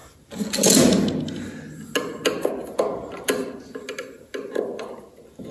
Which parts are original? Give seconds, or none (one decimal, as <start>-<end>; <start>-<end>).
0.0-5.5